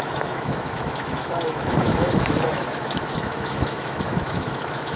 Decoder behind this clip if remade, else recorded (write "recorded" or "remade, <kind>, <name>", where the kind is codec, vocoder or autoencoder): remade, autoencoder, DAC-VAE